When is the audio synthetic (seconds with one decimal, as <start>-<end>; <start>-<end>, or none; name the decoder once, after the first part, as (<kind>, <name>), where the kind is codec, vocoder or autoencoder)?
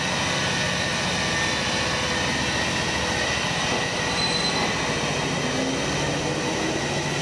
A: none